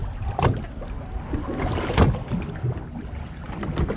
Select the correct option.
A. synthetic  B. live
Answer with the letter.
B